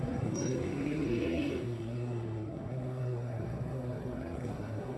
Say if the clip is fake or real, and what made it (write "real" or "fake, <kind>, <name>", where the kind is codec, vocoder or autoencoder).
fake, codec, SNAC